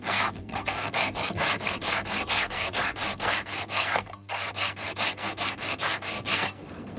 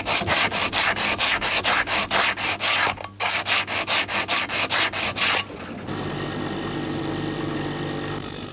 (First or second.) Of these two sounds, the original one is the second